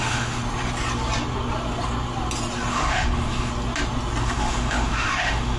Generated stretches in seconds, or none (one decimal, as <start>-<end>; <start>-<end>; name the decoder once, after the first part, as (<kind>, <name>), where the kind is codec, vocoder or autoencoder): 0.0-0.4 (autoencoder, DAC-VAE); 2.7-3.5; 4.2-5.6